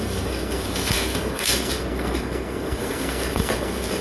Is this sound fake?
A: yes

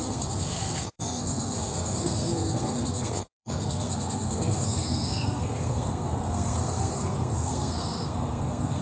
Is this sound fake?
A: yes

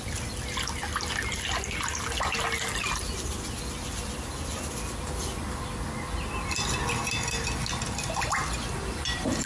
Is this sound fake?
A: no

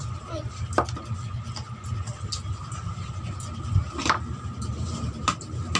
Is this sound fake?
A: no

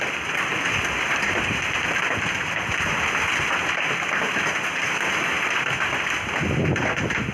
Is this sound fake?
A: no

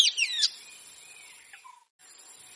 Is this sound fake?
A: no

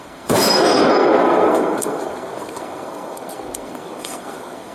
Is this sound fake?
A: yes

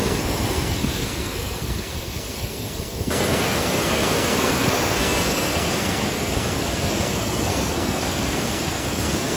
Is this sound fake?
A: yes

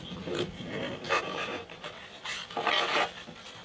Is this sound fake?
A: no